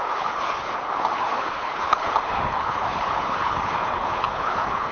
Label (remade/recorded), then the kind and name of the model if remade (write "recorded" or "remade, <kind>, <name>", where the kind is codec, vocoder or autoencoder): remade, codec, HILCodec